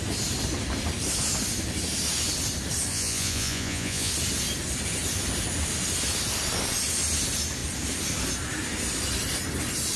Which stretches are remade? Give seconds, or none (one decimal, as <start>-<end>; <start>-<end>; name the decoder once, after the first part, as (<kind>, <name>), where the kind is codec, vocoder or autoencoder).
2.9-4.1 (vocoder, Vocos)